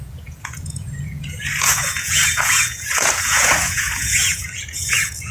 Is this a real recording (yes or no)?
no